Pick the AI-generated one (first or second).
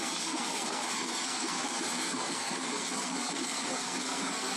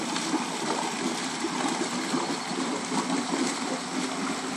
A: first